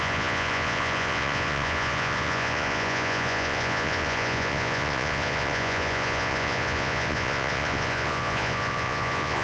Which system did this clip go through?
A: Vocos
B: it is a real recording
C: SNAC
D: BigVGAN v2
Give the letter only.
A